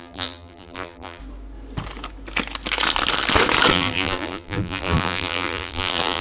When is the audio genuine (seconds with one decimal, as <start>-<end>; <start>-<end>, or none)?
1.2-3.7